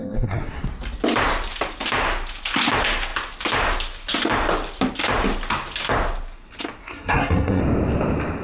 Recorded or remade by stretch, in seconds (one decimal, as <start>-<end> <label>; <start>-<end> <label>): 0.0-0.7 remade; 0.7-6.8 recorded; 6.8-7.6 remade; 7.6-8.4 recorded